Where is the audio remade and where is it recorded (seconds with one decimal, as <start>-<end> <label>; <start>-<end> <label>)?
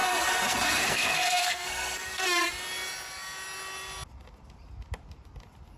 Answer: 0.0-2.5 remade; 2.5-5.8 recorded